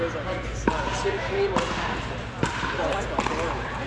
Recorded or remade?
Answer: recorded